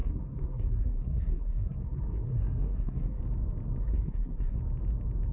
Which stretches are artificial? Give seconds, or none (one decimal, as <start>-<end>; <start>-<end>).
0.0-3.2; 3.8-4.6